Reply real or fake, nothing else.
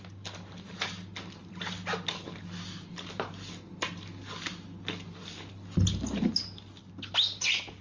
real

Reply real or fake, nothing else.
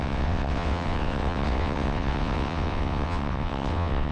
fake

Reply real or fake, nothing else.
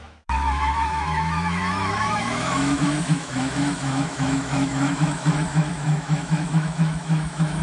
fake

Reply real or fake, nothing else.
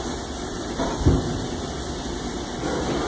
real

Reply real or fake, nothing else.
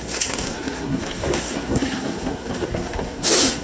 fake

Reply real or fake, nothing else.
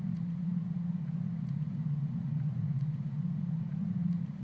fake